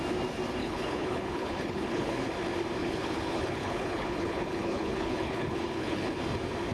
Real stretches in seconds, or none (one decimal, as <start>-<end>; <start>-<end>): 0.0-0.6; 2.3-2.8; 6.2-6.7